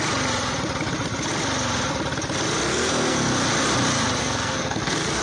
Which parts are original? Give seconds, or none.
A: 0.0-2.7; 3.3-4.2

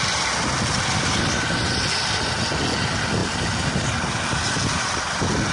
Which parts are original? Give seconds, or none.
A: 0.0-5.5

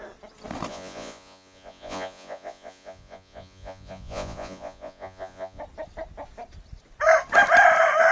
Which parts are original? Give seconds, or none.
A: 0.0-0.7; 5.6-8.1

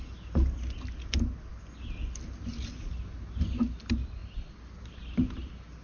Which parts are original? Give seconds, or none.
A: 0.0-5.8